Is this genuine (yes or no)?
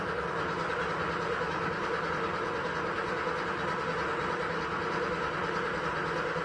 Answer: yes